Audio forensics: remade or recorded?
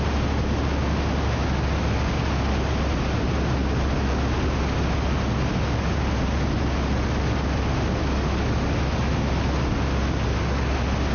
recorded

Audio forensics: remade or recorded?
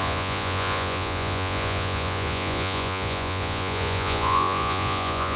remade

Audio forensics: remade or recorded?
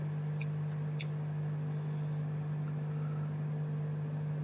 recorded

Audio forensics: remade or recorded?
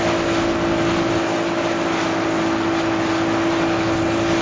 recorded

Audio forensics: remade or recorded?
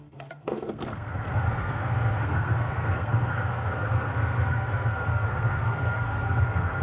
remade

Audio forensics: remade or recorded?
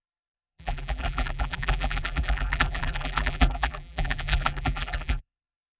remade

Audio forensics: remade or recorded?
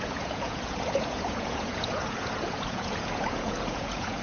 remade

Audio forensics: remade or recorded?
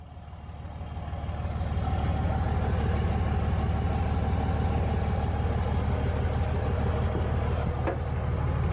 recorded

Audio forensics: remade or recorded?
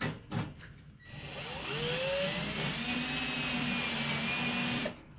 recorded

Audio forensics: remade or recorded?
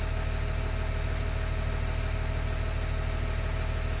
recorded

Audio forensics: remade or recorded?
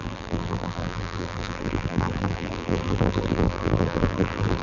remade